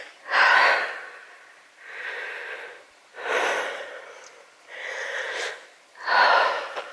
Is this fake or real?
real